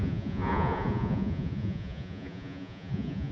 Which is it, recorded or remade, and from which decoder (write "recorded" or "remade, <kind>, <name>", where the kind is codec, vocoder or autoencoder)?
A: remade, vocoder, Vocos